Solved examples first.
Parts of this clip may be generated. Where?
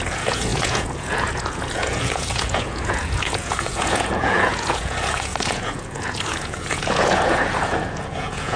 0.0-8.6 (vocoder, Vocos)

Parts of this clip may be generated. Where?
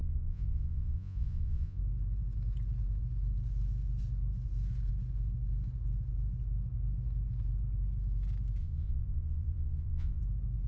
0.0-1.8 (vocoder, Vocos); 8.6-10.2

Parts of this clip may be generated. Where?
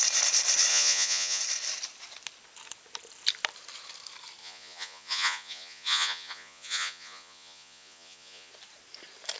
0.7-1.4 (vocoder, Vocos); 4.4-8.5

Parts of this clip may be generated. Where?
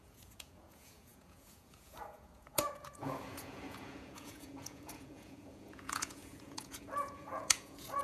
0.0-8.0 (vocoder, Vocos)